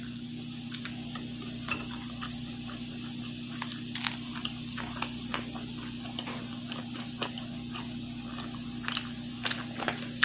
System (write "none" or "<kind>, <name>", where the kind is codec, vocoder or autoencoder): none